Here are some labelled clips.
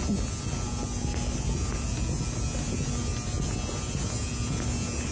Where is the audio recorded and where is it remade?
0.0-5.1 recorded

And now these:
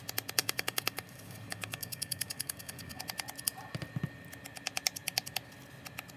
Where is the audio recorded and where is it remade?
0.0-0.4 recorded; 0.4-3.0 remade; 3.0-6.2 recorded

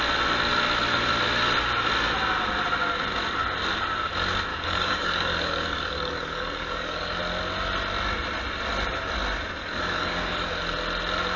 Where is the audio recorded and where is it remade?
0.0-4.5 recorded; 4.5-7.2 remade; 7.2-9.6 recorded; 9.6-10.6 remade; 10.6-11.4 recorded